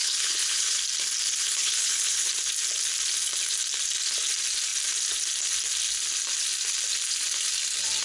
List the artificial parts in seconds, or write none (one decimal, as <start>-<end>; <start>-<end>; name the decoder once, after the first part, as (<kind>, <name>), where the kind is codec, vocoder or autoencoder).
0.0-0.8 (codec, HILCodec); 1.4-2.3

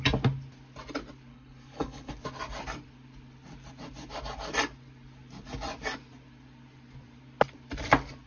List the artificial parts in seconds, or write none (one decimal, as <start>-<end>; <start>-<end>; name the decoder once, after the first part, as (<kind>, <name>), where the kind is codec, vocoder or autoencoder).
1.3-2.1 (codec, HILCodec)

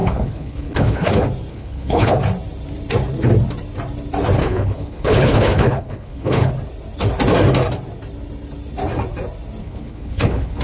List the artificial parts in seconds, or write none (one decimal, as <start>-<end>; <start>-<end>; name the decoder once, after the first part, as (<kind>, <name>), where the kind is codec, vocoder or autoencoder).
0.0-1.1 (codec, HILCodec); 1.5-2.2; 4.4-6.5; 9.6-10.6

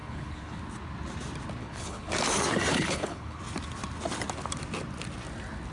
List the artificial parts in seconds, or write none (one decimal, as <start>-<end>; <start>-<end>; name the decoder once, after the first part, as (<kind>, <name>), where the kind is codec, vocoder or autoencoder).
0.0-0.6 (codec, HILCodec); 1.6-2.1; 2.7-3.4

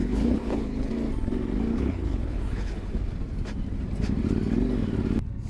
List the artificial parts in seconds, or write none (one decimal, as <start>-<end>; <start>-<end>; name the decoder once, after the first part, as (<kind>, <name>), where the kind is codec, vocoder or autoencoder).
0.0-0.9 (codec, HILCodec); 1.7-2.9